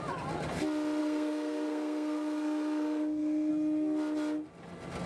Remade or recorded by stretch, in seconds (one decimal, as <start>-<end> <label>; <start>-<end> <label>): 0.0-1.0 recorded; 1.0-3.5 remade; 3.5-5.1 recorded